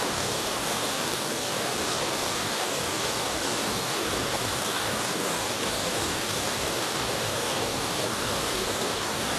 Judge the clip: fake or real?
fake